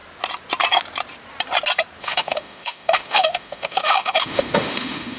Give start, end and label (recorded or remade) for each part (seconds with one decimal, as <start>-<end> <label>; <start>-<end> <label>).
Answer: 0.0-2.0 recorded; 2.0-5.2 remade